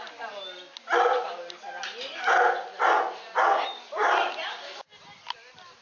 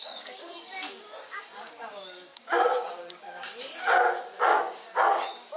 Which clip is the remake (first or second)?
second